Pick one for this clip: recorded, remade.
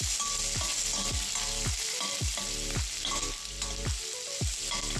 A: recorded